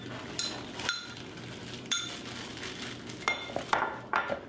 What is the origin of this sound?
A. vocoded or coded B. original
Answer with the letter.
B